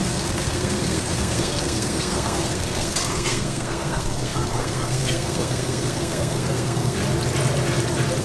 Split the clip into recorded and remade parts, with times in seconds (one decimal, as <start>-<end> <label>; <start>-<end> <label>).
0.0-7.0 remade; 7.0-8.2 recorded